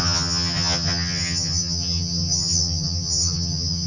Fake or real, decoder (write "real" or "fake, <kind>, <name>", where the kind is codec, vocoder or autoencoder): fake, vocoder, HiFi-GAN